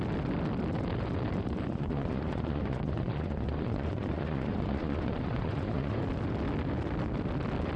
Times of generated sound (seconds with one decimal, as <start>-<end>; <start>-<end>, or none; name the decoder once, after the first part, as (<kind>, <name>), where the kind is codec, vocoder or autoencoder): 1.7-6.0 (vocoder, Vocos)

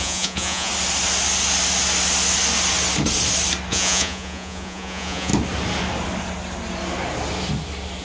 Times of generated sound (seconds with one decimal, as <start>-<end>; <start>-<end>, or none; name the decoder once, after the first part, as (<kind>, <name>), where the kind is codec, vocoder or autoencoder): 0.0-0.7 (vocoder, Vocos); 3.7-5.3

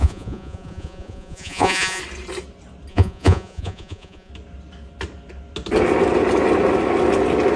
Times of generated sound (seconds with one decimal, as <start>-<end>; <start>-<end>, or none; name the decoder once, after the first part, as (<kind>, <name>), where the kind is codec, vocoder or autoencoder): 0.0-2.0 (vocoder, Vocos); 2.9-4.3

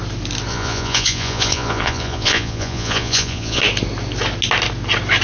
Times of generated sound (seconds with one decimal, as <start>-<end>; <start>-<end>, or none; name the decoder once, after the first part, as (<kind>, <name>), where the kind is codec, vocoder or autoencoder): 0.5-3.6 (vocoder, Vocos)